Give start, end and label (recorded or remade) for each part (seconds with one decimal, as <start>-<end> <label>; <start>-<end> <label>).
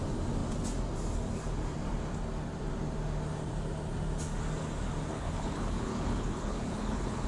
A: 0.0-5.1 recorded; 5.1-7.3 remade